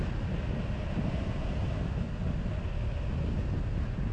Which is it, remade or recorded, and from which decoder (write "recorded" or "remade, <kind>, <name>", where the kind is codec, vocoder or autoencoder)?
recorded